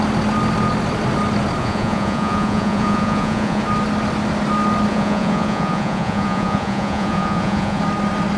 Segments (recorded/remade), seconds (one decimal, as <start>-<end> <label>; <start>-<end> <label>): 0.0-1.6 recorded; 1.6-3.6 remade; 3.6-4.9 recorded; 4.9-7.8 remade; 7.8-8.4 recorded